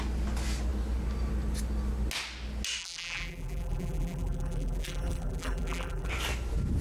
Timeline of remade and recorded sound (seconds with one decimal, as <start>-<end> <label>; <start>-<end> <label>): 0.0-2.8 recorded; 2.8-6.1 remade; 6.1-6.8 recorded